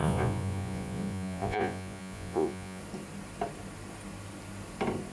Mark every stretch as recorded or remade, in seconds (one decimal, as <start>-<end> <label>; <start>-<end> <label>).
0.0-2.8 remade; 2.8-5.1 recorded